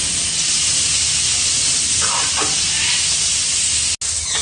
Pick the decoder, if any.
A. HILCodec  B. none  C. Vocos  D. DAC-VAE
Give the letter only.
B